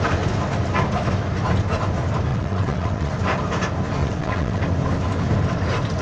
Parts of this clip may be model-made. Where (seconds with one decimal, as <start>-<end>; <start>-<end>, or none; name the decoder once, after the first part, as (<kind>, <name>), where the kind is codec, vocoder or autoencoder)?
2.3-3.1 (vocoder, WaveNeXt); 4.0-4.6